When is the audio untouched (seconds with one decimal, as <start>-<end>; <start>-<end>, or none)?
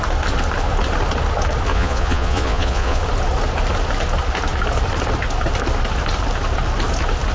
0.0-1.7; 3.0-7.3